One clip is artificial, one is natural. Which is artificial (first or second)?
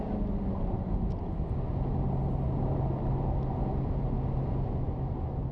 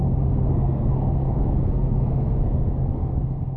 second